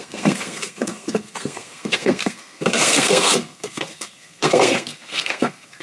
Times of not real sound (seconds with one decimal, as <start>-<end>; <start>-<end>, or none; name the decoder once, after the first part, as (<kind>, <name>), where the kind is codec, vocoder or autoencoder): 0.0-5.8 (codec, SNAC)

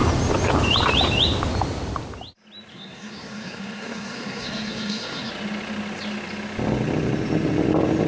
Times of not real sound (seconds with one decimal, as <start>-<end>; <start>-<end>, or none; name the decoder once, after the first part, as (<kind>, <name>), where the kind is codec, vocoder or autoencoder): 2.7-5.3 (codec, SNAC)